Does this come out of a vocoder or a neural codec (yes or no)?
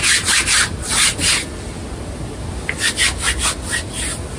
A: no